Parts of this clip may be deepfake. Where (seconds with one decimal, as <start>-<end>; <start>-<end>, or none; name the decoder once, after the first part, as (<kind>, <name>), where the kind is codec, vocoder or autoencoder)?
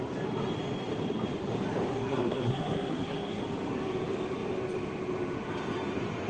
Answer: 1.9-3.4 (codec, SNAC)